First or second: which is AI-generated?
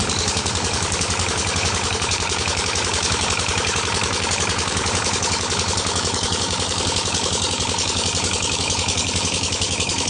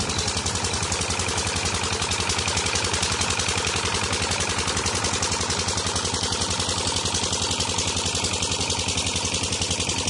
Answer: first